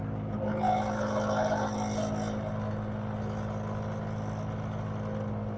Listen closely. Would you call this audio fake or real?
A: real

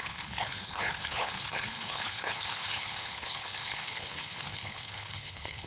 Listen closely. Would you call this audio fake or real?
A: fake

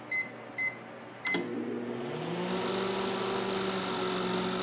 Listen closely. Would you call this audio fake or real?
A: real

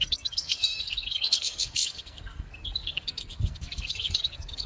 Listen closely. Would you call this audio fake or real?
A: fake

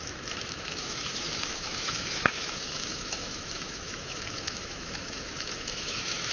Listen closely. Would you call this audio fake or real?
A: fake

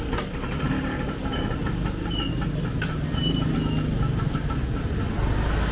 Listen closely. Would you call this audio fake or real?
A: real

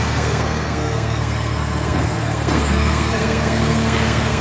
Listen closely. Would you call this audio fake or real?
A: fake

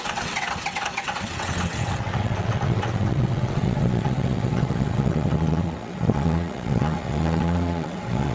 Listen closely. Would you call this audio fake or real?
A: fake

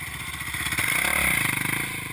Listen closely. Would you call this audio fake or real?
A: real